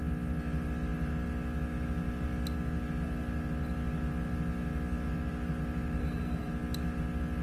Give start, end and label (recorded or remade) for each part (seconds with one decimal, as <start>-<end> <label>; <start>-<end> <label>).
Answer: 0.0-6.0 recorded; 6.0-6.5 remade; 6.5-7.4 recorded